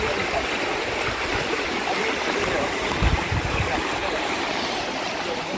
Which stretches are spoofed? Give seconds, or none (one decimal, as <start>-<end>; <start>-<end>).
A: 0.7-2.0; 4.0-4.8